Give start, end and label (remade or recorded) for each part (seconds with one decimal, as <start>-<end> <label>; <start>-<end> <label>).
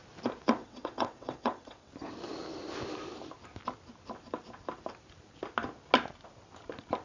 0.0-0.6 recorded; 0.6-1.9 remade; 1.9-7.0 recorded